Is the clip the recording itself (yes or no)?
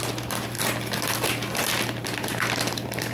no